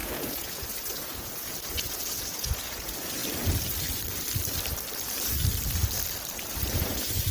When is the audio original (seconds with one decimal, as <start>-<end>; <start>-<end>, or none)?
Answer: 3.2-6.6